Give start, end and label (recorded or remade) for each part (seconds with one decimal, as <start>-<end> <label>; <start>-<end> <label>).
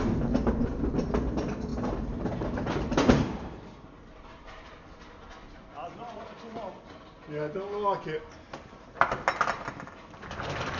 0.0-1.7 recorded; 1.7-5.3 remade; 5.3-10.8 recorded